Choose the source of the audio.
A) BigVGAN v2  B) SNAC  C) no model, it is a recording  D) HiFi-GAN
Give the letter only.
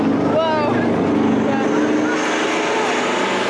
C